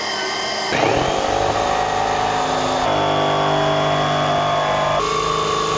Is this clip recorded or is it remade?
recorded